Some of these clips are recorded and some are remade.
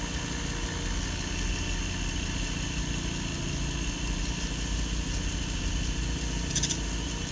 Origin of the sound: recorded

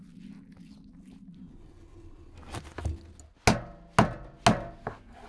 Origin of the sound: recorded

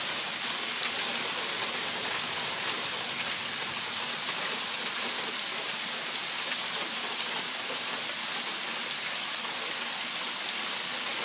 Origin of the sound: recorded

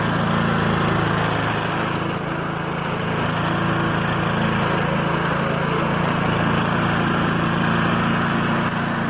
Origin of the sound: recorded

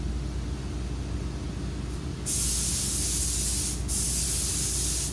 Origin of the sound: recorded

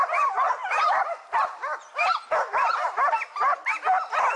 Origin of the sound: recorded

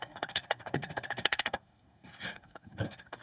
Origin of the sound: remade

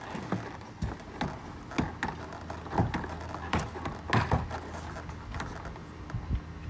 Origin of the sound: recorded